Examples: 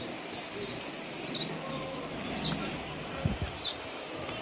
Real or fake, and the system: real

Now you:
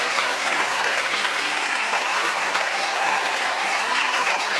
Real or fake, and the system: fake, codec, SNAC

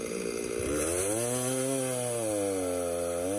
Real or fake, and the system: real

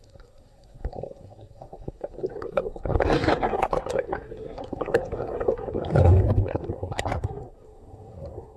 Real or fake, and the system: fake, codec, SNAC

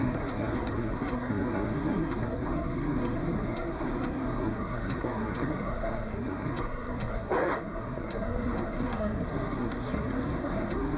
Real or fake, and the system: fake, codec, SNAC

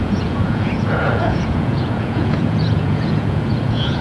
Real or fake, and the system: fake, vocoder, Vocos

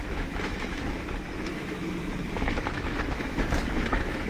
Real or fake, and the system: fake, autoencoder, DAC-VAE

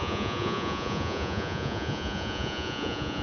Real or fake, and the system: fake, vocoder, Vocos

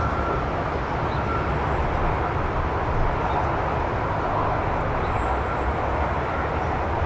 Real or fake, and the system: real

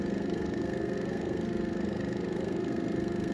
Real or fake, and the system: fake, codec, SNAC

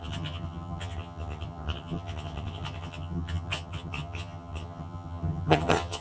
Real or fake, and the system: fake, vocoder, HiFi-GAN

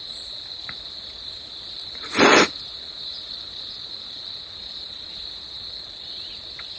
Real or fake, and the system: fake, vocoder, BigVGAN v2